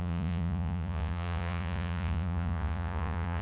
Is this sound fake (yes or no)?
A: yes